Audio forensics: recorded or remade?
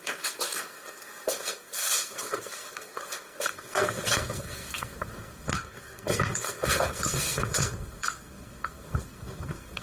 remade